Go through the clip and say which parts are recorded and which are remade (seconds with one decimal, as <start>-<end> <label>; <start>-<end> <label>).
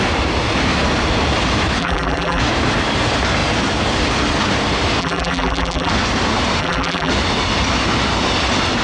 0.0-1.8 recorded; 1.8-2.4 remade; 2.4-5.0 recorded; 5.0-5.9 remade; 5.9-6.6 recorded; 6.6-7.1 remade; 7.1-8.8 recorded